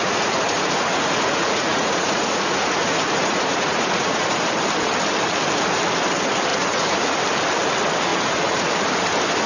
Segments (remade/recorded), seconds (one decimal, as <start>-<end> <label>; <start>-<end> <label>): 0.0-4.3 remade; 4.3-6.5 recorded; 6.5-7.2 remade; 7.2-8.1 recorded; 8.1-8.7 remade; 8.7-9.5 recorded